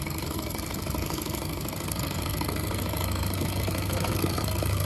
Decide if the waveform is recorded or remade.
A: remade